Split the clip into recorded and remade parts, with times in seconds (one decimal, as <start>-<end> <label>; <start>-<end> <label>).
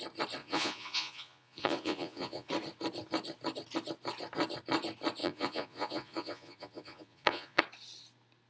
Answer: 0.0-0.4 recorded; 0.4-2.5 remade; 2.5-5.2 recorded; 5.2-7.6 remade; 7.6-8.5 recorded